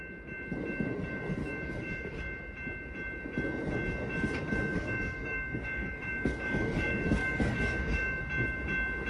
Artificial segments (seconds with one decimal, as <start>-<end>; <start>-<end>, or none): 1.4-2.1; 4.7-8.2